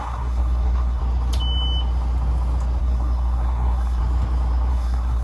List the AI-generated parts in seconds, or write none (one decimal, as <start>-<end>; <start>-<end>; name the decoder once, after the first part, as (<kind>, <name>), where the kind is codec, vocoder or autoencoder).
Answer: 0.0-1.0 (codec, SNAC); 2.8-4.0; 4.7-5.2

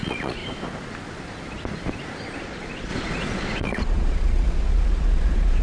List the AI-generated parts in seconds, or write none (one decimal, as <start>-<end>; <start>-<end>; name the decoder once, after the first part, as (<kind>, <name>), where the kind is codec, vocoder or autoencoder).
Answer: 0.0-0.4 (vocoder, Vocos); 2.4-5.6